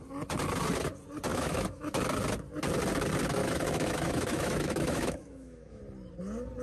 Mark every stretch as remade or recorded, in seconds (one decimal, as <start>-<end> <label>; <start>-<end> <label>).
0.0-1.3 recorded; 1.3-2.0 remade; 2.0-3.4 recorded; 3.4-5.8 remade; 5.8-6.6 recorded